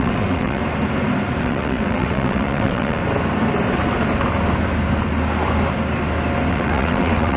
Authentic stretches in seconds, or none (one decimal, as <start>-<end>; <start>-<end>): 0.6-1.4; 3.0-6.5